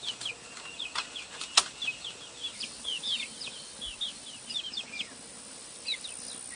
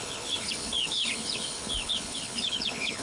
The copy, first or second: second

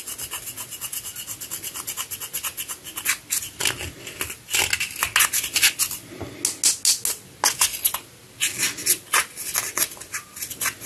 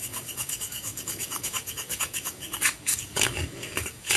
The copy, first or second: second